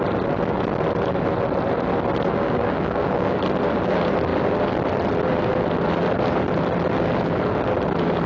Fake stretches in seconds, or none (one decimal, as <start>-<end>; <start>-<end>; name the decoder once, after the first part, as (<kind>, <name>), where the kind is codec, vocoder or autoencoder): 2.3-3.4 (codec, DAC)